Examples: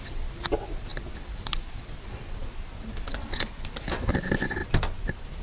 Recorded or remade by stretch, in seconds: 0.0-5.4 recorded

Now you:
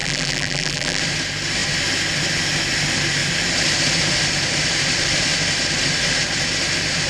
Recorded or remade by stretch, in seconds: 0.0-1.0 remade; 1.0-7.1 recorded

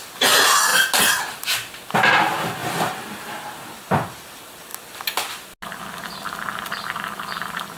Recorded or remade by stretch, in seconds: 0.0-2.6 recorded; 2.6-3.8 remade; 3.8-7.8 recorded

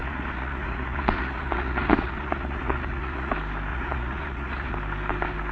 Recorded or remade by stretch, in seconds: 0.0-3.3 remade; 3.3-3.7 recorded; 3.7-4.7 remade; 4.7-5.5 recorded

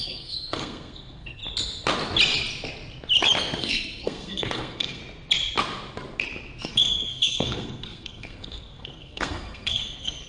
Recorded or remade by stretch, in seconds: 0.0-1.4 remade; 1.4-3.6 recorded; 3.6-5.0 remade; 5.0-6.6 recorded; 6.6-10.3 remade